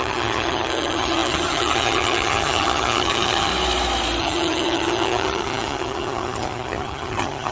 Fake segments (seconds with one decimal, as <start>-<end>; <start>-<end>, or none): 0.0-3.5; 4.2-7.5